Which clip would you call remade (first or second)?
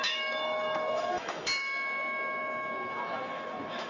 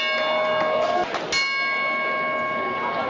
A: first